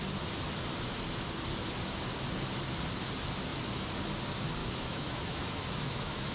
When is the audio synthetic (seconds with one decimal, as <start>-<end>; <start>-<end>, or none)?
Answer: 4.6-6.3